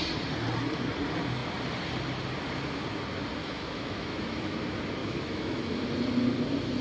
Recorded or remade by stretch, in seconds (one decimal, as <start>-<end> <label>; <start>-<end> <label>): 0.0-3.4 recorded; 3.4-4.6 remade; 4.6-5.0 recorded; 5.0-5.8 remade; 5.8-6.8 recorded